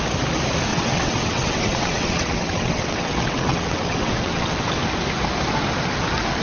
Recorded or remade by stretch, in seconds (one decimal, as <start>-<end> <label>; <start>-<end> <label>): 0.0-0.7 recorded; 0.7-4.5 remade; 4.5-6.4 recorded